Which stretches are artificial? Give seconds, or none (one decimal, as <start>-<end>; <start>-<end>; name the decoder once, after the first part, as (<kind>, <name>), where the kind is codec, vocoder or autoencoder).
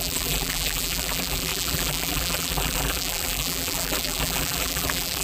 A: 0.0-5.2 (vocoder, BigVGAN v2)